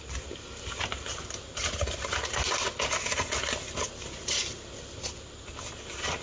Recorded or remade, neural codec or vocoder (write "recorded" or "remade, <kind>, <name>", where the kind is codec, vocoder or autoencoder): recorded